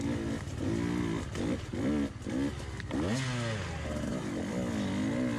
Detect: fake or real real